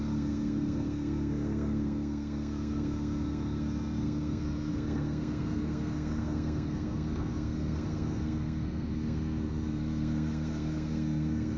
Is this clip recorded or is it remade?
remade